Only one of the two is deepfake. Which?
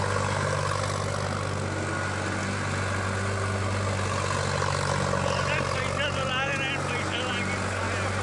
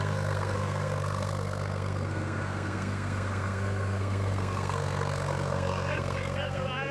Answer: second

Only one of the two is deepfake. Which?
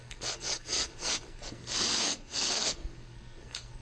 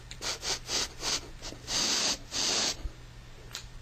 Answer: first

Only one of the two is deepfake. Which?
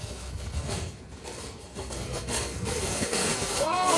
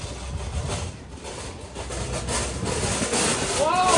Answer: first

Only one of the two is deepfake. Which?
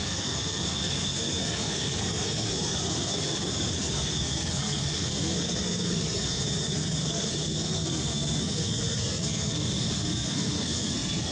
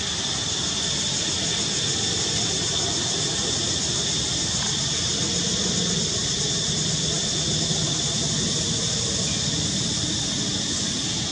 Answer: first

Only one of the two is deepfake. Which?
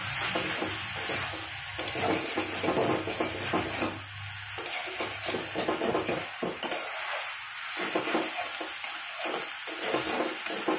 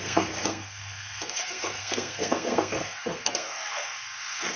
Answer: second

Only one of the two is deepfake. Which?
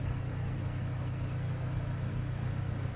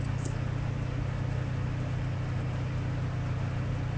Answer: first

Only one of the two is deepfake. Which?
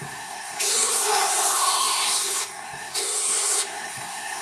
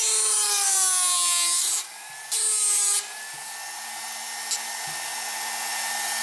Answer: first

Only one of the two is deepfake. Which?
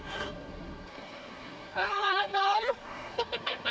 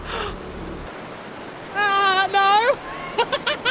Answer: first